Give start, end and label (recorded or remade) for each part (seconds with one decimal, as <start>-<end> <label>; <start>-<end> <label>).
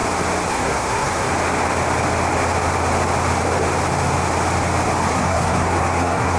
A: 0.0-0.5 recorded; 0.5-1.3 remade; 1.3-5.1 recorded; 5.1-6.4 remade